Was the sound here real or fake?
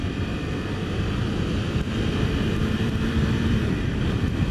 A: fake